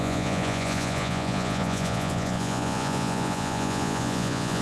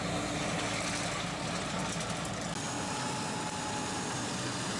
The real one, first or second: second